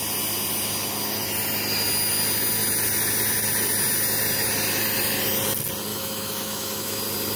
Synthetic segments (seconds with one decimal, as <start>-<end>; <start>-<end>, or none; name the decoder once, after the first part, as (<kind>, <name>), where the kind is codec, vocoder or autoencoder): 5.9-7.0 (autoencoder, DAC-VAE)